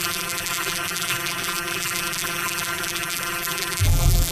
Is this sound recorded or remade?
remade